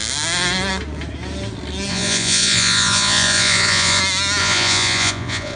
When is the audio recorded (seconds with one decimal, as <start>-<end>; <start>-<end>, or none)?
0.0-1.9; 4.0-4.4